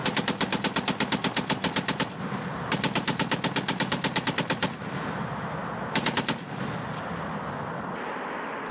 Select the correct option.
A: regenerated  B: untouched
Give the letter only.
B